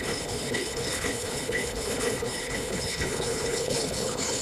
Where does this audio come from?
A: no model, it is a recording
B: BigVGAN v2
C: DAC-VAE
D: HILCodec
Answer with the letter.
D